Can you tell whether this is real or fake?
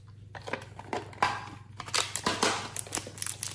real